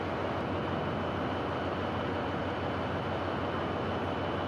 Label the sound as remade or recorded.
recorded